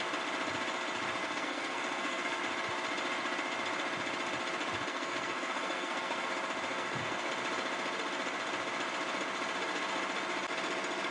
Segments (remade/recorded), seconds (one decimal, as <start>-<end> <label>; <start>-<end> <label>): 0.0-1.2 recorded; 1.2-2.4 remade; 2.4-4.9 recorded; 4.9-6.3 remade; 6.3-6.7 recorded; 6.7-7.3 remade; 7.3-11.1 recorded